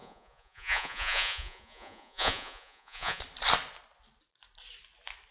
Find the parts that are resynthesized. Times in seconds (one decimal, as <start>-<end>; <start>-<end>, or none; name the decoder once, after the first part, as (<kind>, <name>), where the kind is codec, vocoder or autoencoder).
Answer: 0.0-3.2 (vocoder, Vocos)